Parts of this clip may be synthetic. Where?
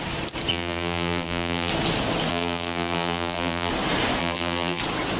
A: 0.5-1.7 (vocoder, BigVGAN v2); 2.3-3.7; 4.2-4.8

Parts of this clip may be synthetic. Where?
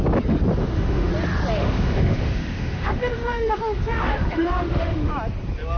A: 0.6-1.1 (autoencoder, DAC-VAE); 1.6-5.1